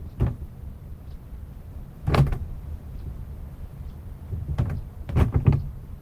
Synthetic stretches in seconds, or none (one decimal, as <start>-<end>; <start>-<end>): 2.0-3.1

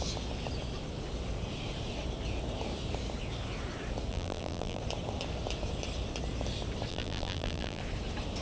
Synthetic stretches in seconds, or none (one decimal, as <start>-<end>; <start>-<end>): 4.1-4.8; 6.9-7.8